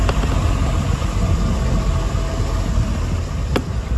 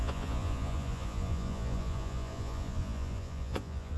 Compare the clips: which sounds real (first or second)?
first